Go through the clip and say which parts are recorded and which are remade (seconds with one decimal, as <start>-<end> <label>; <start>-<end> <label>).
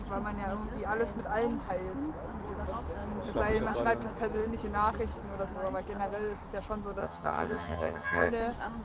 0.0-7.0 recorded; 7.0-8.3 remade; 8.3-8.8 recorded